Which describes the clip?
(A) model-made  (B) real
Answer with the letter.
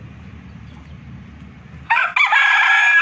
B